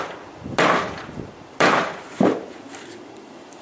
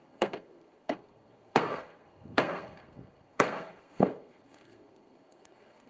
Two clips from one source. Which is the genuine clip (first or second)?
first